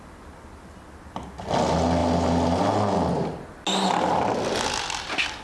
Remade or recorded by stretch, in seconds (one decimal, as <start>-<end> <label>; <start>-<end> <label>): 0.0-5.4 recorded